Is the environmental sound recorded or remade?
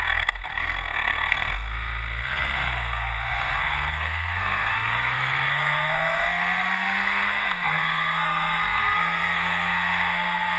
remade